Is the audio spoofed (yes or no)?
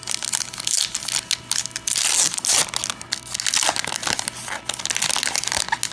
no